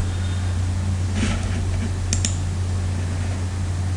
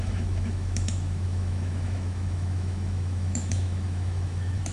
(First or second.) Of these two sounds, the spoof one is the second